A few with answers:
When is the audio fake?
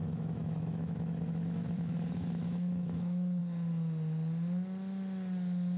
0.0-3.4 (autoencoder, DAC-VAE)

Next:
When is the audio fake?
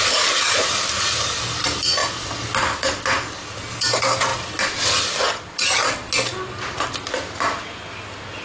none